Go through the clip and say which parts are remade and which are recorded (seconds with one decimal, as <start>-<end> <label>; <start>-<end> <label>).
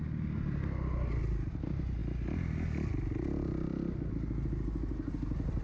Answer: 0.0-5.6 recorded